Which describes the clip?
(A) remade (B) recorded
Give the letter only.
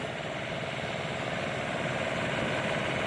B